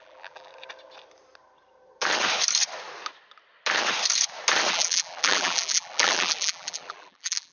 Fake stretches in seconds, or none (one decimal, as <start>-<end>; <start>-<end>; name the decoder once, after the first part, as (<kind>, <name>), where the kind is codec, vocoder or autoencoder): 0.0-0.5 (vocoder, BigVGAN v2); 4.7-7.5